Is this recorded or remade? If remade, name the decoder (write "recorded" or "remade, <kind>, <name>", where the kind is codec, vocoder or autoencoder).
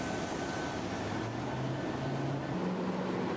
recorded